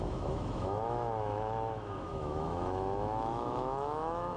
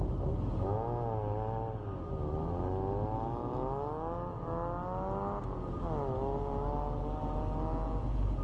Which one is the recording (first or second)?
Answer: second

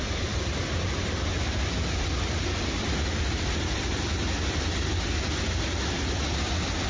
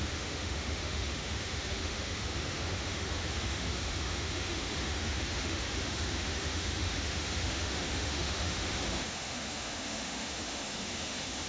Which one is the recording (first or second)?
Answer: first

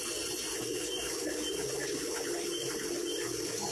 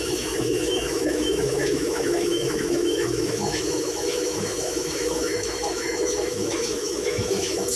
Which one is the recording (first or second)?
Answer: first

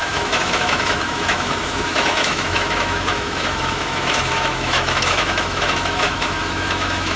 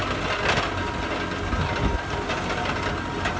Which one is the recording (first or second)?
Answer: second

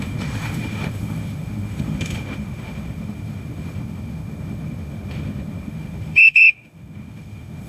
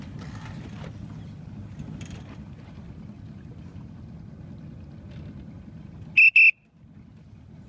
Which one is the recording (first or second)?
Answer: second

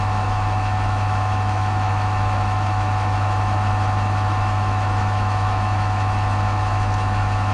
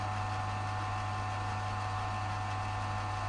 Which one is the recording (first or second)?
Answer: second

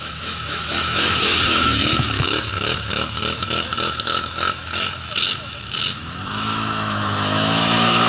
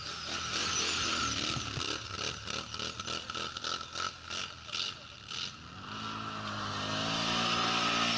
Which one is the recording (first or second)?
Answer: second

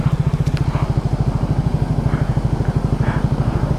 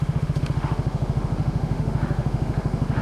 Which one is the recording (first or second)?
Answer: first